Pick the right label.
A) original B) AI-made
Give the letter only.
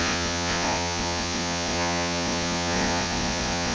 B